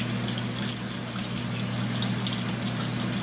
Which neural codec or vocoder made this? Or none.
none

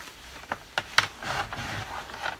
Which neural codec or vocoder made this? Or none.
none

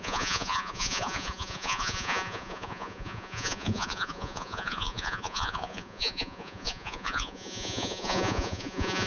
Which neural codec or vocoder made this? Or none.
vocoder, Vocos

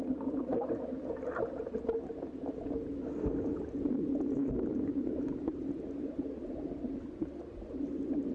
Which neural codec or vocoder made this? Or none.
none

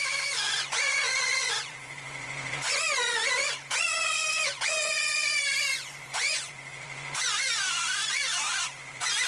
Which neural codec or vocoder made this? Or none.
vocoder, Vocos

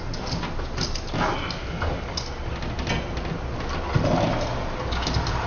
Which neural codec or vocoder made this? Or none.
none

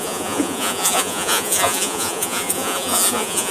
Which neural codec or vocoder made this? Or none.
vocoder, Vocos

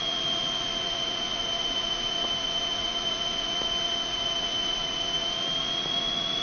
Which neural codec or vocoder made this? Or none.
vocoder, Vocos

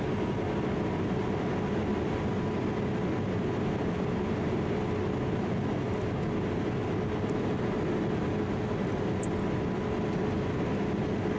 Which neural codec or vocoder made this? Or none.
none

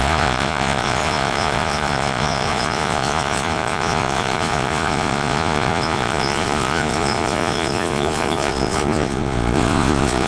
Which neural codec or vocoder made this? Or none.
vocoder, Vocos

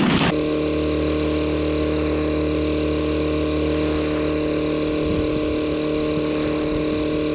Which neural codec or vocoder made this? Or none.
none